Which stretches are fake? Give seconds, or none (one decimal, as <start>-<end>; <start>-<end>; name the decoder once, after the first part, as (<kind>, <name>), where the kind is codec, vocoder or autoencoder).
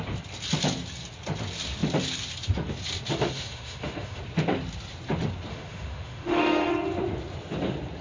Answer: 3.1-4.2 (autoencoder, DAC-VAE); 5.5-6.7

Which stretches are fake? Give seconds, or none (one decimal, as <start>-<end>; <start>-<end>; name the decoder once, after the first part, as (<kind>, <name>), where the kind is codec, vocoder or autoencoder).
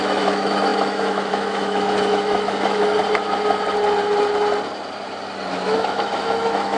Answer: 0.0-3.0 (autoencoder, DAC-VAE); 5.5-6.8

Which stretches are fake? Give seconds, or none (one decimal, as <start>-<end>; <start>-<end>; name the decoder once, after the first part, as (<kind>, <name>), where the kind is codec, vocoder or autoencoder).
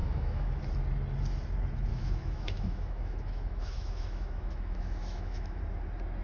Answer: 0.0-0.6 (autoencoder, DAC-VAE); 1.9-5.6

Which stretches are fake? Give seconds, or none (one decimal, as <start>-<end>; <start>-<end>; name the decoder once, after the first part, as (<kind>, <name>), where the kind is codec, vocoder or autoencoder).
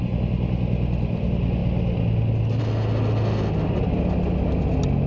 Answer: none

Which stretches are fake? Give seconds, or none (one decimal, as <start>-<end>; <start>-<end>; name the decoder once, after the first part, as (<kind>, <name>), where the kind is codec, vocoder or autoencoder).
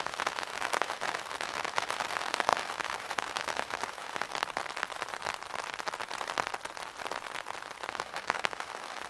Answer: 0.0-4.3 (autoencoder, DAC-VAE); 7.9-9.1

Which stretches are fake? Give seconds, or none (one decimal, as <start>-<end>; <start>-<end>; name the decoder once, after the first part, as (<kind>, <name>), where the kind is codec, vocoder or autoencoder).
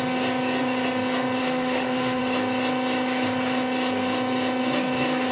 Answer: 1.4-2.2 (autoencoder, DAC-VAE)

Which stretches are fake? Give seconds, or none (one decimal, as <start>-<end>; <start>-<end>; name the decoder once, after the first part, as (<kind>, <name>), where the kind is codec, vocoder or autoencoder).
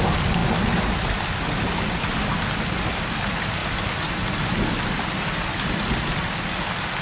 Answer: none